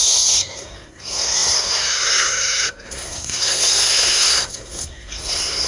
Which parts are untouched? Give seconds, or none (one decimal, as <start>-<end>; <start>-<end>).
none